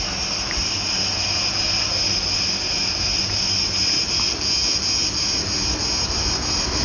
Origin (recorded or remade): recorded